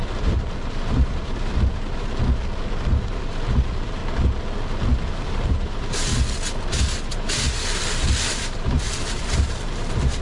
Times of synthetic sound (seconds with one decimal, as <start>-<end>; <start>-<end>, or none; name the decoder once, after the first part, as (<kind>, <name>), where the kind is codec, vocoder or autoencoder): 0.0-2.2 (vocoder, BigVGAN v2); 2.9-4.0; 5.1-6.1; 6.7-10.2